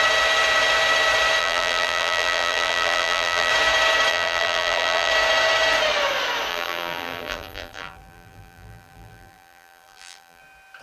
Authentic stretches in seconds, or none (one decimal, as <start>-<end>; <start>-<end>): 0.0-1.4; 3.5-4.1; 5.1-6.5; 10.4-10.8